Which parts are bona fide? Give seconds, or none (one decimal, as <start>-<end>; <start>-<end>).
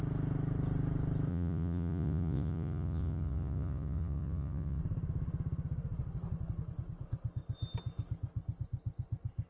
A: 0.0-1.3; 4.8-9.5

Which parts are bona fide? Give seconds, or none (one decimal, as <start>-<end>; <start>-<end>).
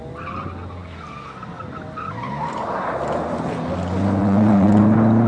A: 0.0-4.2; 4.8-5.3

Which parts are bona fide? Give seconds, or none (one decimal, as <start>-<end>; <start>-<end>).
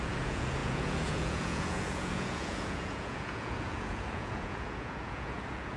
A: none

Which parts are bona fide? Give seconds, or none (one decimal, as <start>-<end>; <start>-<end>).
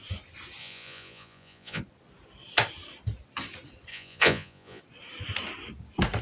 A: 0.0-0.6; 1.8-3.9; 4.8-6.2